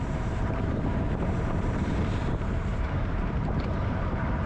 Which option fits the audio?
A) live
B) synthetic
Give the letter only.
B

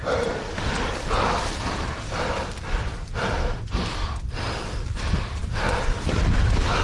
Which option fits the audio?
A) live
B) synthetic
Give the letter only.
B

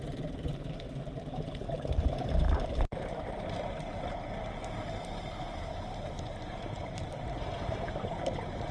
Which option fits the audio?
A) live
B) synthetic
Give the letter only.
B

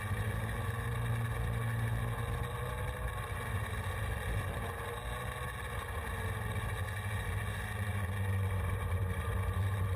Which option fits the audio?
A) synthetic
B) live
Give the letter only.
B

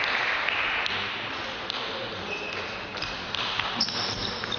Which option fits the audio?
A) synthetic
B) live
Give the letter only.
B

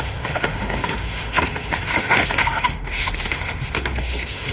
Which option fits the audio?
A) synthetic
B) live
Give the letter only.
A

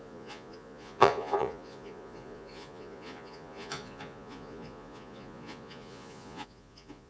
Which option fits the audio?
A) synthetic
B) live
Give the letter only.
A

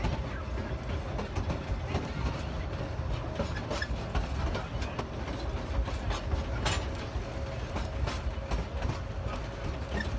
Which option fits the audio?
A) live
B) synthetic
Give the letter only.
A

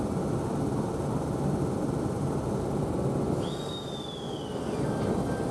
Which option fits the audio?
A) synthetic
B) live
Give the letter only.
B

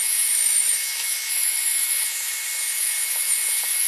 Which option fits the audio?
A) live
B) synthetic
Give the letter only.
B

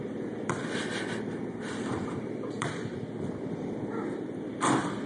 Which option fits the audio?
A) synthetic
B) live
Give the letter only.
A